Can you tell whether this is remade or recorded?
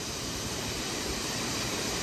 remade